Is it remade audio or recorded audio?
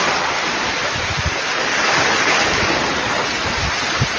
recorded